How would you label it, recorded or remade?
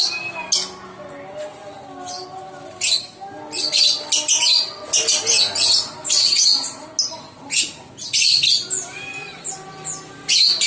recorded